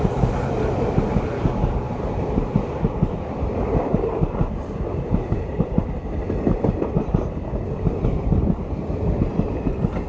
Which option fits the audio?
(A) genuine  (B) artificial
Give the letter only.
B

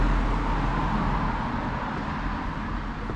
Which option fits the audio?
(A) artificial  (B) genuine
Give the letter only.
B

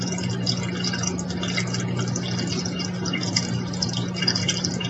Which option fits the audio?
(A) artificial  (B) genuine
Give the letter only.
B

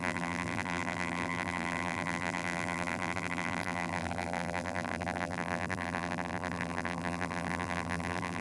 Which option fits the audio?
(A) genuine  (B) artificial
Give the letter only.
B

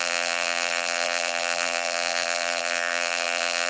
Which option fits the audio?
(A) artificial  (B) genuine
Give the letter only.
A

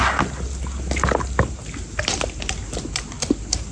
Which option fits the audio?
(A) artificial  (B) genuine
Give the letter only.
B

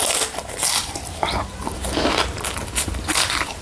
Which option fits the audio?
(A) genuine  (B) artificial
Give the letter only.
B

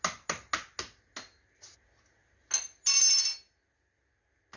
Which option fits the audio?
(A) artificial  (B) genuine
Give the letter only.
B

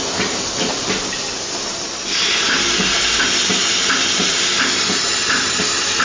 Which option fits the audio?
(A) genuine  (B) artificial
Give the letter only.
B